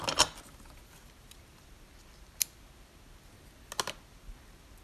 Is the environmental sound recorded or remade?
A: recorded